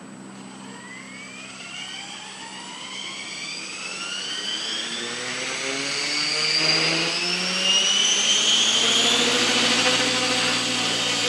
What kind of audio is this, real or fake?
real